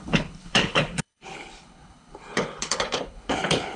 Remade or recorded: remade